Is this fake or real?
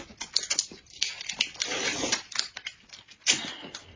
real